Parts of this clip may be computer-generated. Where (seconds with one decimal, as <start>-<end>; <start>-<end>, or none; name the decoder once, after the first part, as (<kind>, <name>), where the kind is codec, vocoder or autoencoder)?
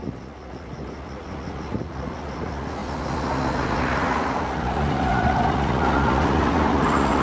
0.0-7.2 (vocoder, Vocos)